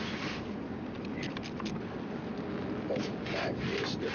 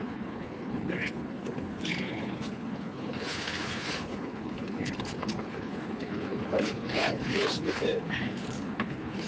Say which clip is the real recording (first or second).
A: first